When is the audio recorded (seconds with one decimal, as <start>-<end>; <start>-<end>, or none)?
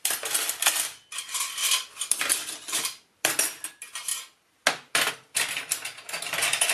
0.0-1.6; 3.3-6.7